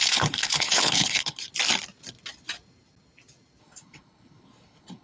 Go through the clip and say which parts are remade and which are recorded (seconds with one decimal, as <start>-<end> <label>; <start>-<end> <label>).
0.0-1.4 remade; 1.4-3.6 recorded; 3.6-5.0 remade